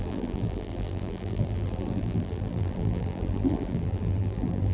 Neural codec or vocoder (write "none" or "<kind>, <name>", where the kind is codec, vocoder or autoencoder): vocoder, BigVGAN v2